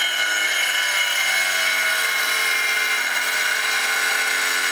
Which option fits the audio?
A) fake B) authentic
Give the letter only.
B